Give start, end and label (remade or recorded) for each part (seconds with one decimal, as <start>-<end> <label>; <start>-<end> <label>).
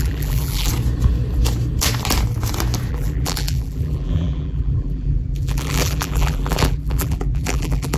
0.0-0.7 remade; 0.7-2.9 recorded; 2.9-8.0 remade